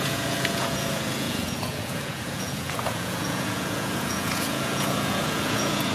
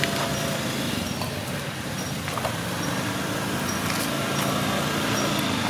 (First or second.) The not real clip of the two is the first